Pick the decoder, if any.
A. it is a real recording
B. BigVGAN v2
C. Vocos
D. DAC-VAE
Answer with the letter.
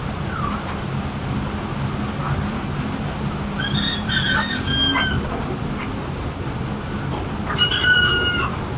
A